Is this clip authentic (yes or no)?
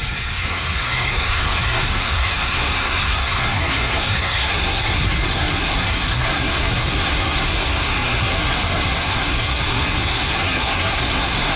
no